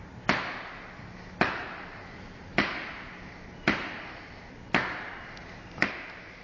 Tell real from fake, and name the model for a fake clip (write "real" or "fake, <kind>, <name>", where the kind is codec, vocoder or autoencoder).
real